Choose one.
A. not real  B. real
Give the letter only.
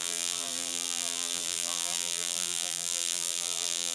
A